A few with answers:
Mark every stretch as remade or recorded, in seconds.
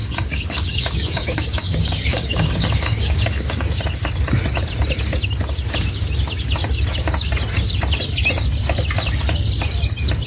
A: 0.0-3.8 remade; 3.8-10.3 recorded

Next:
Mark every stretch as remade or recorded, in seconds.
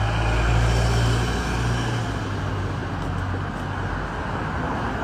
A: 0.0-5.0 recorded